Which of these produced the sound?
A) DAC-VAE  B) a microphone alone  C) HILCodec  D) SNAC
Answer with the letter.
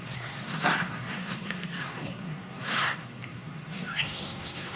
D